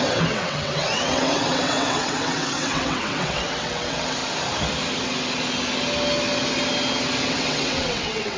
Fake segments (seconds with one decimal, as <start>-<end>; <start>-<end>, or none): 0.0-4.2; 7.3-8.4